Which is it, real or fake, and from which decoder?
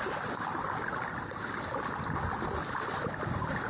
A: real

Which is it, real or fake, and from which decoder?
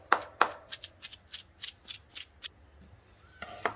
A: real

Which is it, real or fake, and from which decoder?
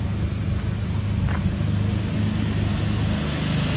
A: real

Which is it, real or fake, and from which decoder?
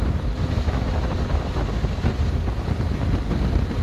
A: real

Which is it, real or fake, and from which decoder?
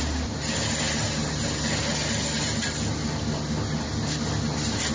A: real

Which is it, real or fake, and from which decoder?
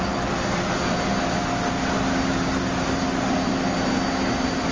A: real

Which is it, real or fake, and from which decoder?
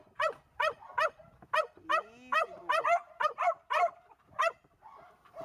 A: real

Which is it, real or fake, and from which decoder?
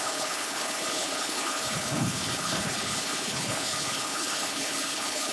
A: fake, codec, HILCodec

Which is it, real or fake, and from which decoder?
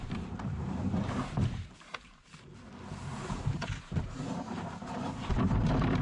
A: fake, vocoder, BigVGAN v2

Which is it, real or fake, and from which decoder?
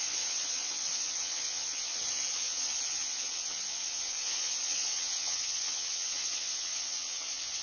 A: fake, vocoder, WaveNeXt